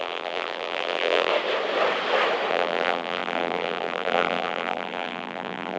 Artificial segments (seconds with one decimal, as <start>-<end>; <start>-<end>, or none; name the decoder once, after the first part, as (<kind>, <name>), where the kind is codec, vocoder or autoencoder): 0.0-1.3 (vocoder, BigVGAN v2); 2.5-5.8